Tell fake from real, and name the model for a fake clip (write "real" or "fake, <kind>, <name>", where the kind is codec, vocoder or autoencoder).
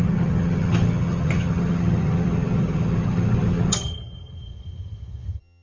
fake, vocoder, HiFi-GAN